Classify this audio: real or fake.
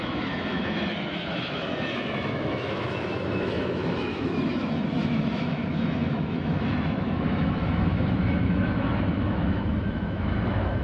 fake